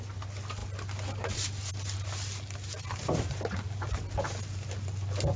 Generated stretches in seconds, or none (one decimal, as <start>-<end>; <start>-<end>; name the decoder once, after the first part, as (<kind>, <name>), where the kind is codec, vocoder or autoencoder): none